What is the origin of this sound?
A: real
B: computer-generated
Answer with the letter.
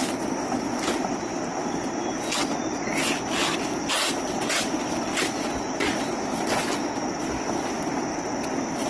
A